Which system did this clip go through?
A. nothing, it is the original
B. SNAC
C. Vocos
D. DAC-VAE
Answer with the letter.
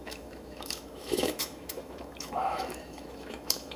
D